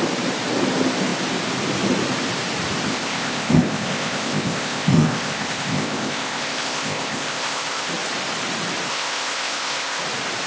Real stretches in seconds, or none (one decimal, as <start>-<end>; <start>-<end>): 0.0-2.9; 7.9-8.9; 10.0-10.5